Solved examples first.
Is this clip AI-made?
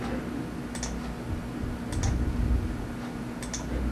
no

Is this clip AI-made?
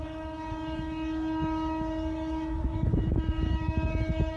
yes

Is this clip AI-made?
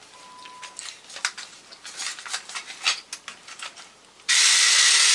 no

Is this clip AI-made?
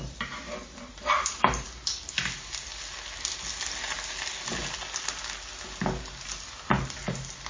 no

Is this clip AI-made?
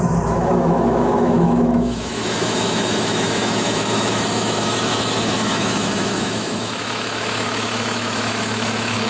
yes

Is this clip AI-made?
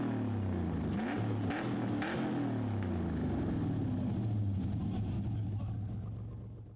no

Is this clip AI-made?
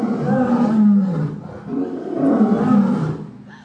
no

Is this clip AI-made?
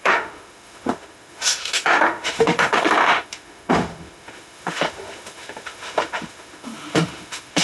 yes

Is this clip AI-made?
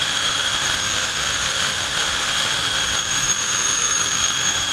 yes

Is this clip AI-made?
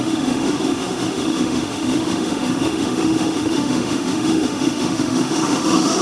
yes